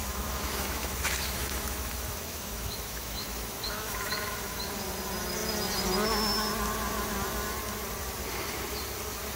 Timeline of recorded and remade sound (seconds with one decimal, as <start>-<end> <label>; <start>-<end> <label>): 0.0-4.8 remade; 4.8-9.4 recorded